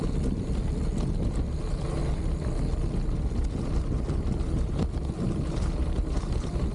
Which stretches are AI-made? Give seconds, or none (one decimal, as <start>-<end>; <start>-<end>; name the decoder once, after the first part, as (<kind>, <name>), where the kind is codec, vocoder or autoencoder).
none